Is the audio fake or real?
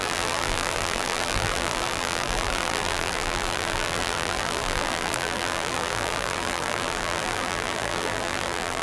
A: fake